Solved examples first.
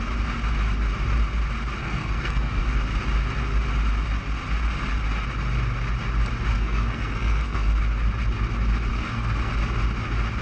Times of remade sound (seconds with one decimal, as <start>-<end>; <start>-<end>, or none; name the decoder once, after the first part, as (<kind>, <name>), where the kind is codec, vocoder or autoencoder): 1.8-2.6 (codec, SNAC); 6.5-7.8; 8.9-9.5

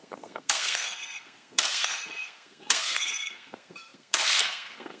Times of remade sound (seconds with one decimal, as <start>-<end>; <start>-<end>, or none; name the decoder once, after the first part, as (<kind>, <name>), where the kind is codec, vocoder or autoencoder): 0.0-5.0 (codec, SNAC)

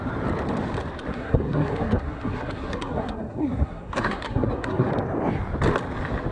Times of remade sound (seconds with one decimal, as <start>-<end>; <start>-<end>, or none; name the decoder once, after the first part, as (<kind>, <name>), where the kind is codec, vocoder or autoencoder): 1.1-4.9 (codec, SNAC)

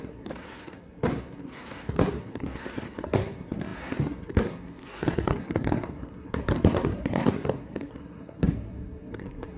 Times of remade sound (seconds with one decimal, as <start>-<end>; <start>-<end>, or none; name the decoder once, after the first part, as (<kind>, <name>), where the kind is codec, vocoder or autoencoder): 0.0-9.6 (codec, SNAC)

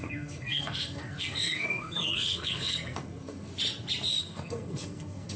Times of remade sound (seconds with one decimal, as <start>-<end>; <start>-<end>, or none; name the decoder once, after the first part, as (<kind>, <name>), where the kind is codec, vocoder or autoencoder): 0.0-3.5 (codec, SNAC); 4.2-5.4

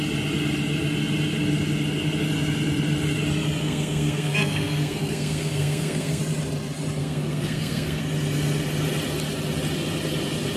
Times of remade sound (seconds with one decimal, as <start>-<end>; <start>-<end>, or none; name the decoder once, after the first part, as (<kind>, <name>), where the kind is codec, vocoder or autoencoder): 3.6-6.2 (codec, SNAC); 7.0-8.0